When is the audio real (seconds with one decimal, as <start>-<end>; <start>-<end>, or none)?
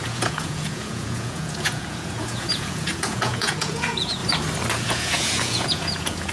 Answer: 4.2-4.7